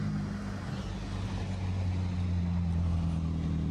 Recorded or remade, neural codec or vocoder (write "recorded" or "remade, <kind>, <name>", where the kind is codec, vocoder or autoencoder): recorded